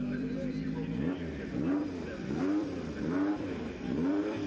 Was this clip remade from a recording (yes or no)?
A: yes